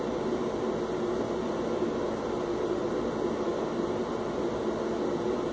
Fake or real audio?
real